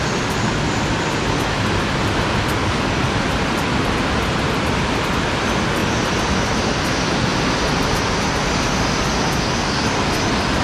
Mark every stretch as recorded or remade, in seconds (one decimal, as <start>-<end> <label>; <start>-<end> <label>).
0.0-2.6 recorded; 2.6-3.2 remade; 3.2-10.6 recorded